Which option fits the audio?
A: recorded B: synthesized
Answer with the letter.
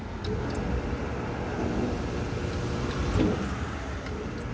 A